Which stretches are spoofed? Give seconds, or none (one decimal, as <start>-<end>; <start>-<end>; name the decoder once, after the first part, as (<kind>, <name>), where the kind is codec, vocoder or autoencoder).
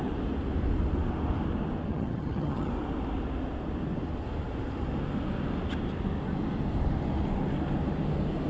1.9-2.7 (vocoder, HiFi-GAN)